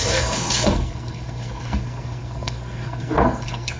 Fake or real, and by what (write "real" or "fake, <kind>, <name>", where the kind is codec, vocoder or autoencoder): fake, codec, SNAC